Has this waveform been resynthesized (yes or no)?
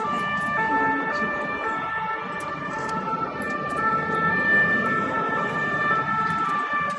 no